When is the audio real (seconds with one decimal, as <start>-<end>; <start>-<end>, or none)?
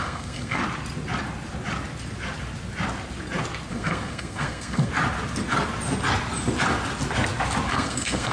0.6-3.7; 4.9-7.7